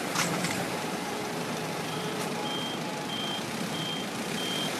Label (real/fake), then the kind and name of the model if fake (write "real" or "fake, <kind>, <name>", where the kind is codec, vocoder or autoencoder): fake, vocoder, BigVGAN v2